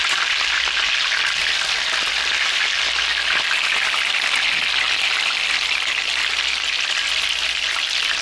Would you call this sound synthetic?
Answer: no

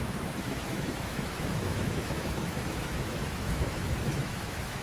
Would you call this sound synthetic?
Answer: yes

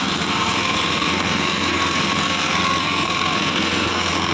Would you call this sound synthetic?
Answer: yes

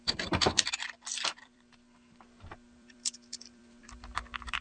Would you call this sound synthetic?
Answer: yes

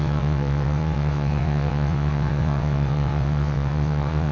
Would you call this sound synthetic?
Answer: yes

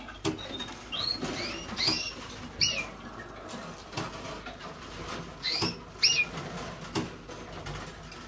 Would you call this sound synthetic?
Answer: no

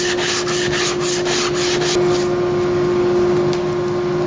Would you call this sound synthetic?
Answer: no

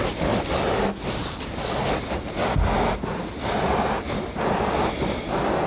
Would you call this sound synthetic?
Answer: no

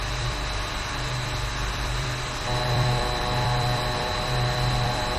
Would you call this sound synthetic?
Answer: yes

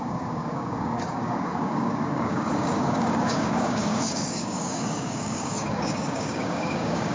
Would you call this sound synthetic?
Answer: yes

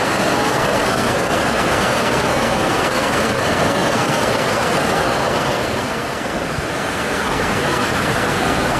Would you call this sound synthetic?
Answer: yes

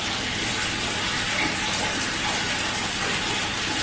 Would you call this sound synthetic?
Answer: no